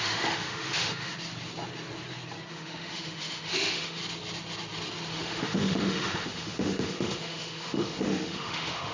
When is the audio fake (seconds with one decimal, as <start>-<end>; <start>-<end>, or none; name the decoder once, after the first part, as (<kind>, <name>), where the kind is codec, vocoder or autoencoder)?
0.0-1.1 (autoencoder, DAC-VAE); 2.5-4.0; 5.1-8.9